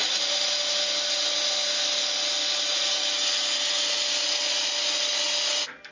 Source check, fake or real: real